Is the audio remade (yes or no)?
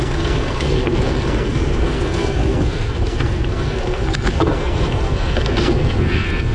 yes